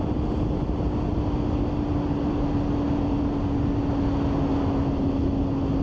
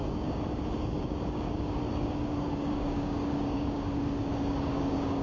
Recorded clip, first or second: first